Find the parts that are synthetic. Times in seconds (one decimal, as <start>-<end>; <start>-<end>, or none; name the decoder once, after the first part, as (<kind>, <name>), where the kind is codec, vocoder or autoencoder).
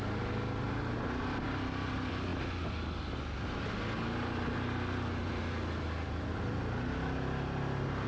none